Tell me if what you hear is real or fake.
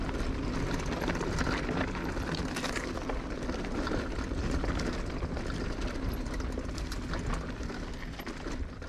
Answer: real